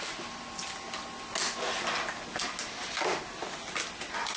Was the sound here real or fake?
real